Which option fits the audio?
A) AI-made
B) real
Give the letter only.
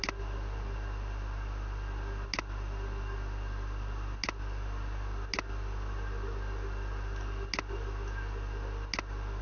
B